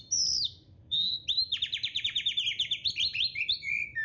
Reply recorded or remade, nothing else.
recorded